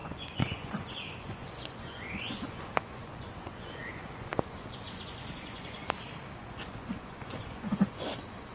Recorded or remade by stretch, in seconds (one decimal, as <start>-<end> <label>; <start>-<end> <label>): 0.0-5.8 remade; 5.8-6.4 recorded; 6.4-8.5 remade